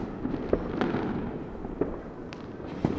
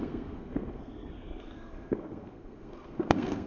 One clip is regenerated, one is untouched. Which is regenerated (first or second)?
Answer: second